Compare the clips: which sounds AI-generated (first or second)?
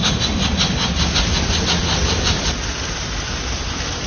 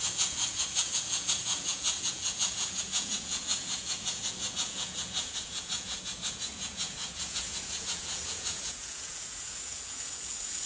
second